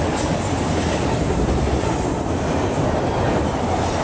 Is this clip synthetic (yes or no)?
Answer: no